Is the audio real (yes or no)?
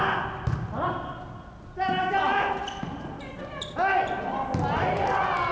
yes